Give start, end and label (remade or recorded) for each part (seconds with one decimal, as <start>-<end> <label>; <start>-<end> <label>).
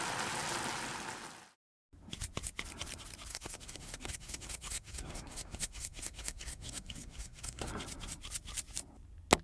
0.0-3.3 recorded; 3.3-7.7 remade; 7.7-9.4 recorded